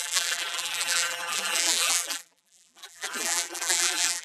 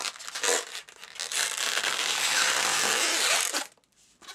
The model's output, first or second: first